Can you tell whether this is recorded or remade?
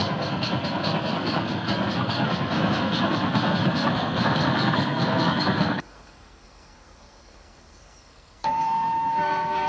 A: remade